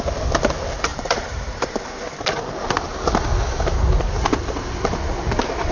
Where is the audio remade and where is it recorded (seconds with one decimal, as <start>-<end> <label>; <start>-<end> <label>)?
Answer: 0.0-0.9 recorded; 0.9-2.0 remade; 2.0-5.7 recorded